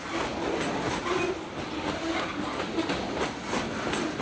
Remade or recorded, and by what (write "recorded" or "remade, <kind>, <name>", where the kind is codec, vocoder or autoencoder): recorded